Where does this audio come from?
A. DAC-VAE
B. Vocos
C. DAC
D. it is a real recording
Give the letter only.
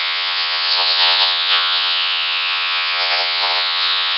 B